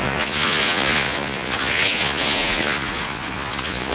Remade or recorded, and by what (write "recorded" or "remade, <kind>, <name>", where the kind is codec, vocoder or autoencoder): remade, vocoder, Vocos